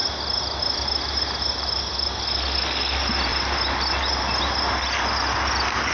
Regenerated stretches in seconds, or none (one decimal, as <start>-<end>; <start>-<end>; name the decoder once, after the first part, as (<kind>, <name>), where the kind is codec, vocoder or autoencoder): none

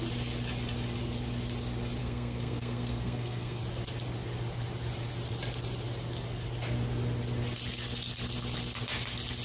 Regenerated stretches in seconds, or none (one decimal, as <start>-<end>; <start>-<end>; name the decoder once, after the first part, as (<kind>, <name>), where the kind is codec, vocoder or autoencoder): 2.0-3.6 (codec, SNAC)

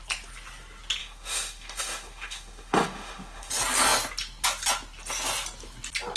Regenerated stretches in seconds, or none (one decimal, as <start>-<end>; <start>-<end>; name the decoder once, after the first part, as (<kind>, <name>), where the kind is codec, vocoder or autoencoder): 1.0-3.5 (autoencoder, DAC-VAE)

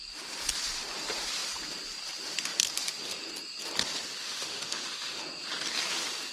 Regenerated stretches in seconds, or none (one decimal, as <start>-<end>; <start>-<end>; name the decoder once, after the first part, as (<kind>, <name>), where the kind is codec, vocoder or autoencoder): 4.2-5.2 (autoencoder, DAC-VAE)

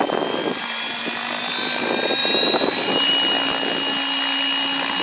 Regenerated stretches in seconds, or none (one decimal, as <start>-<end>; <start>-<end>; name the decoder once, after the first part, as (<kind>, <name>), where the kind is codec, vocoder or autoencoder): 0.5-1.0 (vocoder, BigVGAN v2); 2.2-3.1